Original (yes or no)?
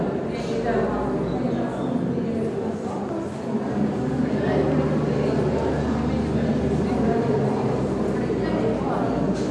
yes